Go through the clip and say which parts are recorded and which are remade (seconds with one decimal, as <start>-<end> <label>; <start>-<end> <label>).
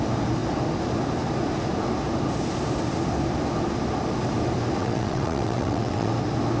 0.0-4.8 recorded; 4.8-6.1 remade; 6.1-6.6 recorded